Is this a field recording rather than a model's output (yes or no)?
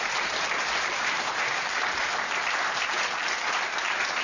yes